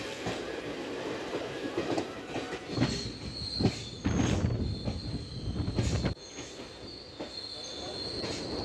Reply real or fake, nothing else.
real